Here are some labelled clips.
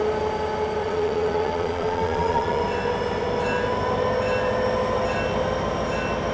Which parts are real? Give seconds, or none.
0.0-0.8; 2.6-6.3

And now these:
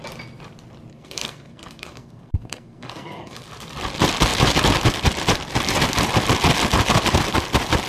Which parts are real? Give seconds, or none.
0.0-0.9; 3.5-7.9

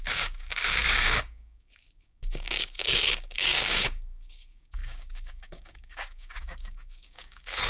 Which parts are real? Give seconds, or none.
none

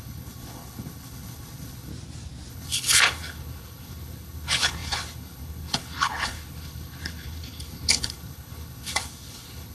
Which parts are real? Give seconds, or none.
1.9-2.5

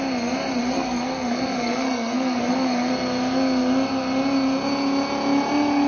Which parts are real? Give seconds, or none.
0.0-0.6; 2.9-5.9

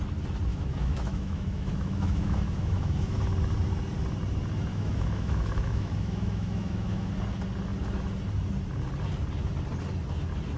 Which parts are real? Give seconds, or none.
0.0-0.5; 3.2-4.7; 7.1-10.6